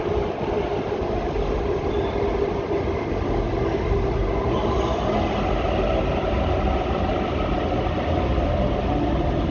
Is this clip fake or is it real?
real